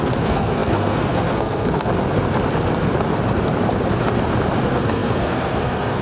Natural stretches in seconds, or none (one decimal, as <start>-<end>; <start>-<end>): 1.9-4.6

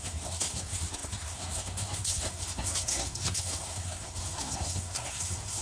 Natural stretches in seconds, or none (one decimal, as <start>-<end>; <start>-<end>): none

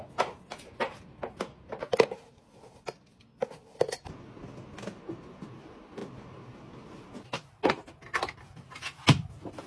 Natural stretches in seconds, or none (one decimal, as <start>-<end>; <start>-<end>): 0.0-9.7

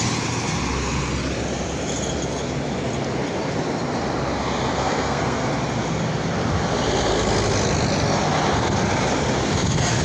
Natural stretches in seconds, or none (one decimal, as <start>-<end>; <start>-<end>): 0.0-4.7; 5.5-10.0